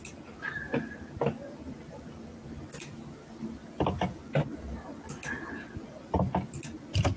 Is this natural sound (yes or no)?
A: yes